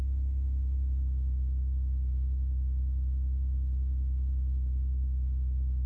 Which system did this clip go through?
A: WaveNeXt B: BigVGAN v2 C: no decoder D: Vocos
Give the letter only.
C